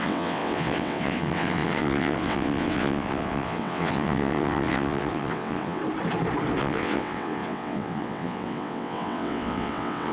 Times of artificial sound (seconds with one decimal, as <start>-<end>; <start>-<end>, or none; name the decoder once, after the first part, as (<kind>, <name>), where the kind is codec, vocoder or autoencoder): 0.0-5.8 (vocoder, WaveNeXt); 6.6-10.1

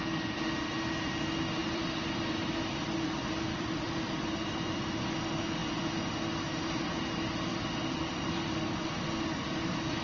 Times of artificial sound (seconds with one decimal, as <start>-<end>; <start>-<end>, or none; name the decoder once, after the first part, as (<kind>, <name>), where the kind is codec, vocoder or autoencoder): 1.6-5.0 (vocoder, BigVGAN v2); 7.5-8.7

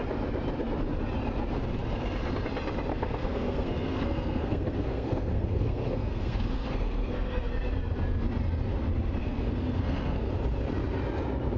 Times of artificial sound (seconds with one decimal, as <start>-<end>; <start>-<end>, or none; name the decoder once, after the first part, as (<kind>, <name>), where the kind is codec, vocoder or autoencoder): 2.9-7.5 (codec, SNAC); 9.2-10.3

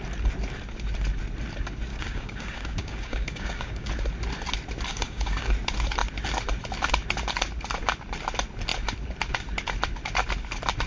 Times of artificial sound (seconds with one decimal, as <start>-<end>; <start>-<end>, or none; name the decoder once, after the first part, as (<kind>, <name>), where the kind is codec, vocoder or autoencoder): 1.9-3.9 (codec, DAC); 4.9-5.5

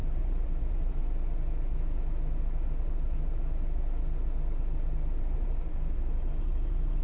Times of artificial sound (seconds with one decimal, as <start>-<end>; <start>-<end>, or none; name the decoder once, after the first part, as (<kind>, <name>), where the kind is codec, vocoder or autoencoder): 0.0-1.0 (vocoder, BigVGAN v2); 5.2-7.0

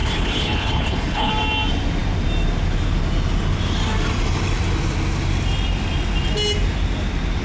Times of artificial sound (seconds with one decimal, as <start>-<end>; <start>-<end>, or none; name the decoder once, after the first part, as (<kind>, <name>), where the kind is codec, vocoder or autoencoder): 0.0-1.3 (codec, HILCodec)